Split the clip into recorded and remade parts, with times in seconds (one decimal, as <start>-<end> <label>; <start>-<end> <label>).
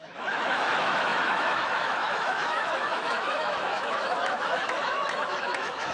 0.0-5.9 remade